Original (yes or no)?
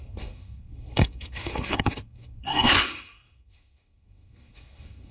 no